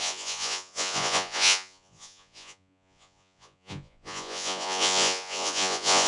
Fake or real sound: fake